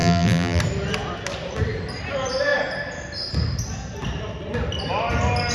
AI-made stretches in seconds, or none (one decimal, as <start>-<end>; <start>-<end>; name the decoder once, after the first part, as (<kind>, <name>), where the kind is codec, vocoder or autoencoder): 0.0-0.6 (vocoder, BigVGAN v2)